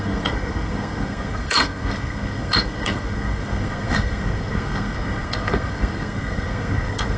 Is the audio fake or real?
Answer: fake